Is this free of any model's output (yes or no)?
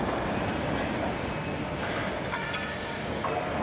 yes